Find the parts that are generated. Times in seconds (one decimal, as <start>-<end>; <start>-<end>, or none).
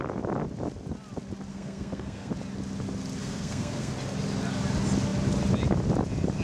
1.5-2.3; 3.2-3.9